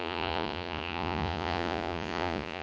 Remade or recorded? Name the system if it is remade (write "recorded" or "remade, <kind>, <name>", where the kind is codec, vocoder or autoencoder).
remade, vocoder, Vocos